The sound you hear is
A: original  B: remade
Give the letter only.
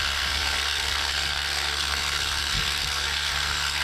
B